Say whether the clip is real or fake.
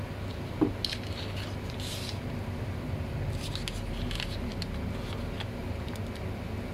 real